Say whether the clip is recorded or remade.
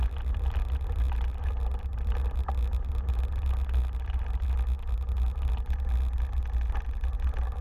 recorded